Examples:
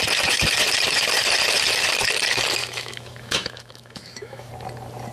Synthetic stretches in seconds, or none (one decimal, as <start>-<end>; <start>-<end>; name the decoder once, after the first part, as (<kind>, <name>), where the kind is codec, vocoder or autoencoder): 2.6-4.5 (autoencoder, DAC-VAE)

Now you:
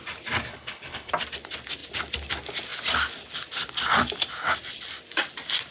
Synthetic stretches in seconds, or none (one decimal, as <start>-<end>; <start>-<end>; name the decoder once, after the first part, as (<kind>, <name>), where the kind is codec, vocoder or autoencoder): 0.5-1.1 (codec, HILCodec)

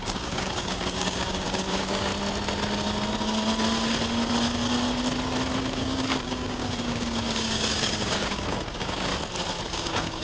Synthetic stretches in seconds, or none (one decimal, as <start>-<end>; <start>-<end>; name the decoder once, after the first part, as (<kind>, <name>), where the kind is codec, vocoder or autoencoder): 0.0-2.1 (codec, DAC); 5.6-9.1; 9.7-10.2

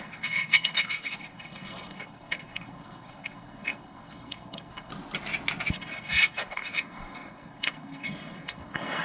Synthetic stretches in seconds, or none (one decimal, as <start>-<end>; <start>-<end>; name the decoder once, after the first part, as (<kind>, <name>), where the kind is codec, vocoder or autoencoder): 0.0-4.9 (codec, SNAC); 5.7-9.0